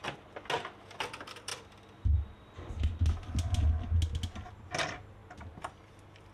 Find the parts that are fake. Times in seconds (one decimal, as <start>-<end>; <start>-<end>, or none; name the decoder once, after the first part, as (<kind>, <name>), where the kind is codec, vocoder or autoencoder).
none